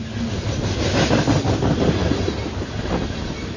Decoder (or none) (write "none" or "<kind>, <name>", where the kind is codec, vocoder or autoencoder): none